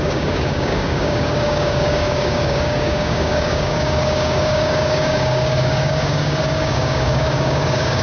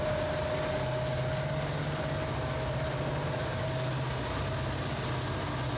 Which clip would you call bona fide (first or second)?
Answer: second